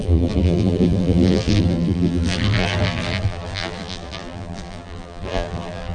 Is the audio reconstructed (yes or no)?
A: yes